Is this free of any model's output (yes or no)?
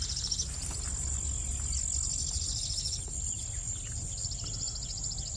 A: yes